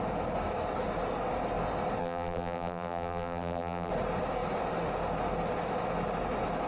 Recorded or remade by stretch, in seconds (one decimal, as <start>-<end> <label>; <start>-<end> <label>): 0.0-2.0 recorded; 2.0-3.9 remade; 3.9-6.7 recorded